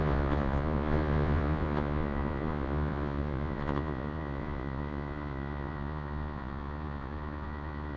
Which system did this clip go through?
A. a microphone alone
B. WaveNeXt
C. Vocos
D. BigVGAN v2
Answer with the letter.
C